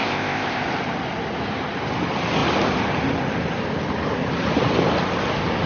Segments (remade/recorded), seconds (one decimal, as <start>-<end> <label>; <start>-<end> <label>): 0.0-0.6 remade; 0.6-5.7 recorded